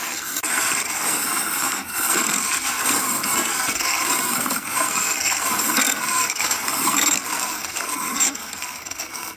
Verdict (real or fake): fake